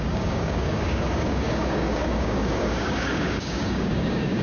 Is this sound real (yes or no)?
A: no